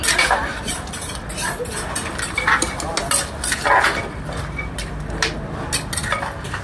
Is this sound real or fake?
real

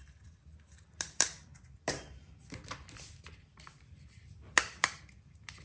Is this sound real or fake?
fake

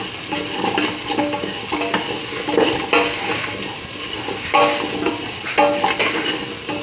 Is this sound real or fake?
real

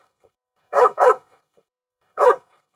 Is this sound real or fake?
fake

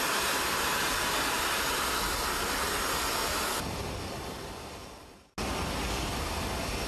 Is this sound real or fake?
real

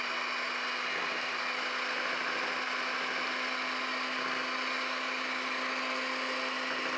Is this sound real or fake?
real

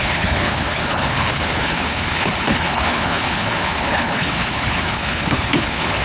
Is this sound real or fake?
fake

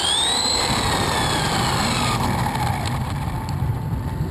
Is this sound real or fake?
real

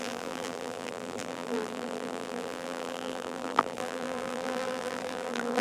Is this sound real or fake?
fake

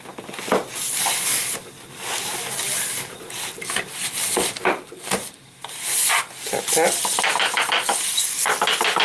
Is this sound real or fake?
real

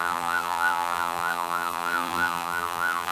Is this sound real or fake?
fake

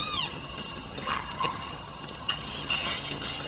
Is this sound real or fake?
fake